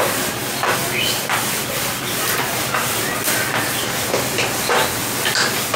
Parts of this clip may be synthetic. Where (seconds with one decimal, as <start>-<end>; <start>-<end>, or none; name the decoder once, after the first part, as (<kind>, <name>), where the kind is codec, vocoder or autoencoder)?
none